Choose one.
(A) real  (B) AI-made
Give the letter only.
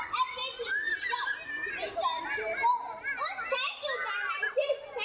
A